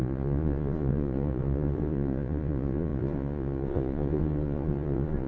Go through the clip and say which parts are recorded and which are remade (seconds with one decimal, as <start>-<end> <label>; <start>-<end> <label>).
0.0-5.3 remade